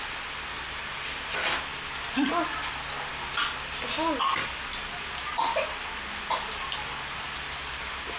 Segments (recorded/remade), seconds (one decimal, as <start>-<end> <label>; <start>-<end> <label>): 0.0-8.2 recorded

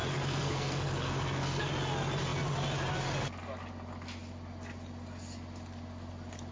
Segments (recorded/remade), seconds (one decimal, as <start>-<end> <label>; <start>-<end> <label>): 0.0-1.7 remade; 1.7-6.5 recorded

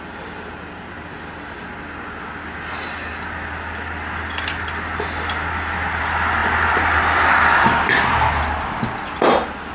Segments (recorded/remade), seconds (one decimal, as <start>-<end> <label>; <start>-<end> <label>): 0.0-9.7 recorded

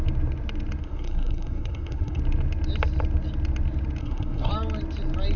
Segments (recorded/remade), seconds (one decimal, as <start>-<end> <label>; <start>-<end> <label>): 0.0-0.8 recorded; 0.8-2.2 remade; 2.2-4.0 recorded; 4.0-4.5 remade; 4.5-5.4 recorded

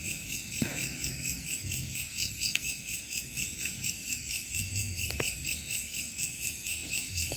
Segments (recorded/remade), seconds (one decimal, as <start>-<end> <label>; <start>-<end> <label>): 0.0-7.4 remade

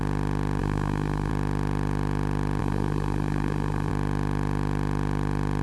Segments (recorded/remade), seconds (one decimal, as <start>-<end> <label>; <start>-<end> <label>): 0.0-0.6 recorded; 0.6-1.3 remade; 1.3-2.6 recorded; 2.6-3.9 remade; 3.9-5.6 recorded

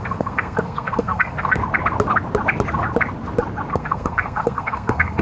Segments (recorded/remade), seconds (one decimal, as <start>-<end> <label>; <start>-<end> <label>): 0.0-1.6 remade; 1.6-3.7 recorded; 3.7-5.2 remade